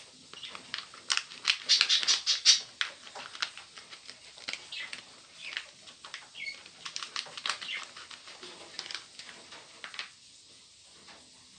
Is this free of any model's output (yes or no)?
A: yes